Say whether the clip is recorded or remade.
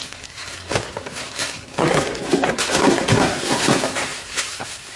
remade